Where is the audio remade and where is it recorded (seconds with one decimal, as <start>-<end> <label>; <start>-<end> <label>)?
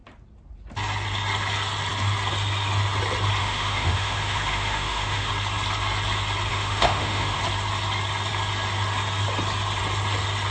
0.0-3.4 recorded; 3.4-5.3 remade; 5.3-6.5 recorded; 6.5-7.4 remade; 7.4-10.5 recorded